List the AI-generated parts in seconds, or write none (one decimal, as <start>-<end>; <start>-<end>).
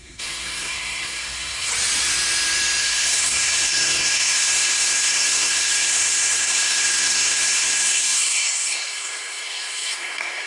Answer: 0.0-1.7; 2.8-10.5